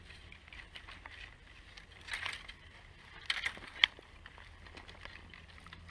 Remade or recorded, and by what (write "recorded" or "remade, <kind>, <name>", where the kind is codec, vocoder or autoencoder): recorded